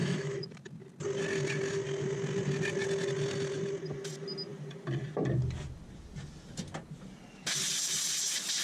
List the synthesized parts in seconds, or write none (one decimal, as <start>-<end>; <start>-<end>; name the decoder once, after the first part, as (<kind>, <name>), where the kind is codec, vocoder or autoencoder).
0.0-0.6 (autoencoder, DAC-VAE)